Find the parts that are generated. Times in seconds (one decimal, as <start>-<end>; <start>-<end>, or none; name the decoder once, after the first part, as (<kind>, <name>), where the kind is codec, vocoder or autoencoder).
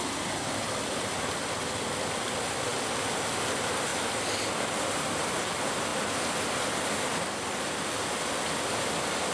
none